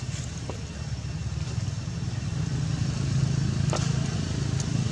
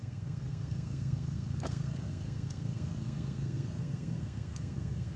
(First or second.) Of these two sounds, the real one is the first